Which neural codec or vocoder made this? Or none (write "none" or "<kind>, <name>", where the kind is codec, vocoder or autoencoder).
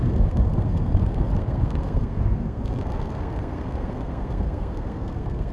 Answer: codec, SNAC